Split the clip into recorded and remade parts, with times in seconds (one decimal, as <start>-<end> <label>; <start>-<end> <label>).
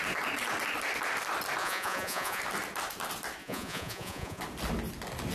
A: 0.0-1.6 recorded; 1.6-2.4 remade; 2.4-3.4 recorded; 3.4-4.4 remade; 4.4-5.3 recorded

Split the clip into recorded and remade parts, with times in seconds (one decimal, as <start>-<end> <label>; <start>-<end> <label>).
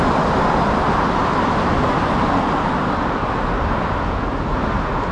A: 0.0-5.1 recorded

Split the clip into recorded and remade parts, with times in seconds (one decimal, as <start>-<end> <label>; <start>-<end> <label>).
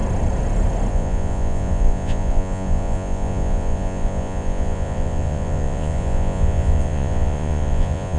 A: 0.0-0.9 recorded; 0.9-8.2 remade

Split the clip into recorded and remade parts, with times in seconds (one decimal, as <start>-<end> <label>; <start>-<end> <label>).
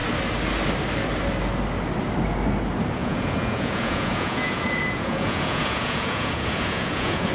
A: 0.0-3.0 recorded; 3.0-7.3 remade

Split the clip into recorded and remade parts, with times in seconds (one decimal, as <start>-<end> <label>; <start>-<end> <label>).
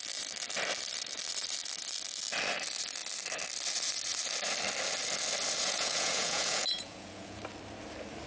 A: 0.0-5.6 recorded; 5.6-7.4 remade; 7.4-8.3 recorded